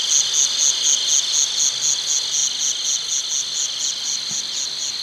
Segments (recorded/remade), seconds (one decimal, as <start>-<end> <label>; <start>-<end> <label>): 0.0-5.0 recorded

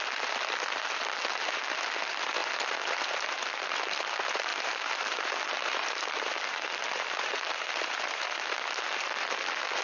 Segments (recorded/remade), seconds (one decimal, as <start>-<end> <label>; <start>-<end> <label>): 0.0-4.5 recorded; 4.5-6.0 remade; 6.0-9.8 recorded